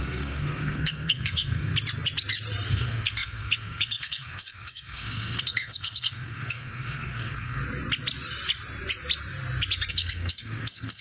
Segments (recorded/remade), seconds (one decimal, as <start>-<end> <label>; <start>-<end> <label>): 0.0-1.7 remade; 1.7-2.7 recorded; 2.7-7.6 remade; 7.6-9.9 recorded; 9.9-11.0 remade